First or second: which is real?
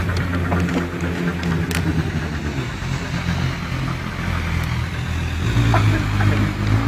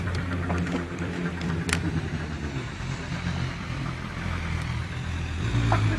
first